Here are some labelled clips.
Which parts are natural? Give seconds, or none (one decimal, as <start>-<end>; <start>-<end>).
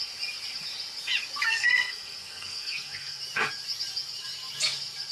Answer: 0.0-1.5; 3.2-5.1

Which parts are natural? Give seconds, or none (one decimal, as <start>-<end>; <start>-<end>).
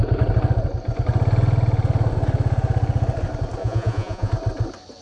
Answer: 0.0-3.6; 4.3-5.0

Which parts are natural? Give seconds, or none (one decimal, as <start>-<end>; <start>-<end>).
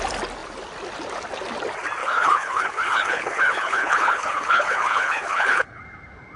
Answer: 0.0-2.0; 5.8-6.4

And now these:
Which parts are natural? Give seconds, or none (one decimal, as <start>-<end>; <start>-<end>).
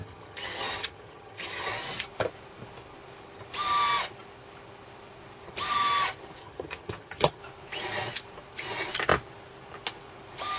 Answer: 1.7-6.4; 7.4-10.6